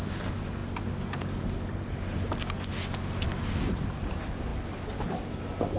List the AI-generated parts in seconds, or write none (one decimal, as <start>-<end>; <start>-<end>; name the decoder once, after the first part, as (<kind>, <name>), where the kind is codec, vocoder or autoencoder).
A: none